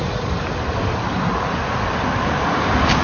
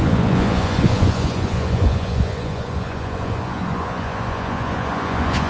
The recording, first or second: first